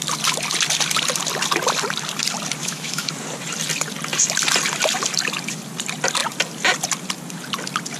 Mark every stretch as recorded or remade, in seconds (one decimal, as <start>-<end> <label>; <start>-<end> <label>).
0.0-2.6 recorded; 2.6-3.1 remade; 3.1-8.0 recorded